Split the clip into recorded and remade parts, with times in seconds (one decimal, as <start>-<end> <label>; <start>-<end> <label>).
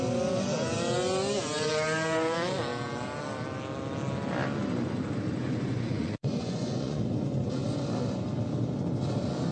0.0-5.4 recorded; 5.4-7.0 remade; 7.0-9.5 recorded